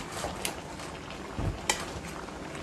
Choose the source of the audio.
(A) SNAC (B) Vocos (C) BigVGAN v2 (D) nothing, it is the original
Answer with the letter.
D